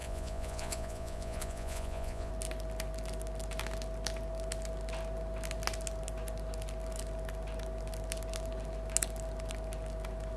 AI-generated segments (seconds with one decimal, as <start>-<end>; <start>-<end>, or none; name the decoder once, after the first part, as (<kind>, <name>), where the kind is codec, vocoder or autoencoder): 0.0-2.3 (vocoder, Vocos)

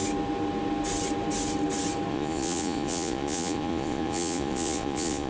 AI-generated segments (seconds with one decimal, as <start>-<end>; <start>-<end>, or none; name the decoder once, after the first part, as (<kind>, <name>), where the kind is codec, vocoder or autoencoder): 2.1-5.3 (vocoder, Vocos)

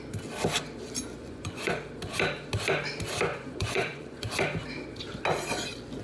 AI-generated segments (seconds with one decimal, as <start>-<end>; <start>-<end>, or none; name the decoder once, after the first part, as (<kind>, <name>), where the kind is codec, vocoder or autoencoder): 1.2-1.7 (vocoder, Vocos); 3.3-4.3

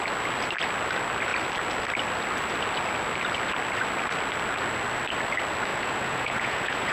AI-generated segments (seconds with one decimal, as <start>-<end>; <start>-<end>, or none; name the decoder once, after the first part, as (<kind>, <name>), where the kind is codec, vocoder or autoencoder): 5.7-6.9 (vocoder, Vocos)

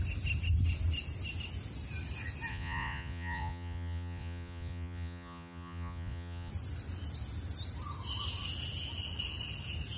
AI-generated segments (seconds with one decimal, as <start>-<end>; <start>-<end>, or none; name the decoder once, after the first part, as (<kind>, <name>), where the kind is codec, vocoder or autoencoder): 2.5-6.5 (vocoder, Vocos)

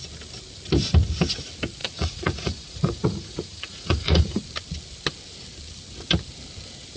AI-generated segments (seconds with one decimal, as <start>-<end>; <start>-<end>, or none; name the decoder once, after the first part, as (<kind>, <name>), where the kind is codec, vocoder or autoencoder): 1.8-4.4 (vocoder, Vocos)

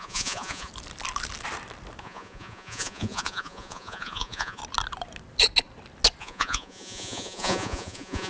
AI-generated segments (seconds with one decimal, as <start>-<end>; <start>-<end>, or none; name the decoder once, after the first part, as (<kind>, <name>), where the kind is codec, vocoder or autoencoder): 0.0-0.7 (vocoder, Vocos); 2.0-4.6; 6.2-8.3